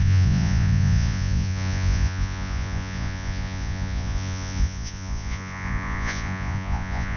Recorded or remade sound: remade